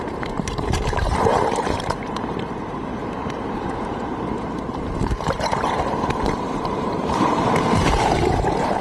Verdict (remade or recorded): remade